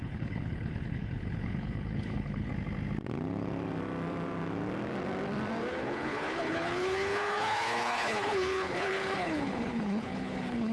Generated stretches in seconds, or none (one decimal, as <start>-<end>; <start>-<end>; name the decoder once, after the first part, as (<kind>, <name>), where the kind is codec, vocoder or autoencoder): 0.0-2.5 (codec, HILCodec); 5.7-10.7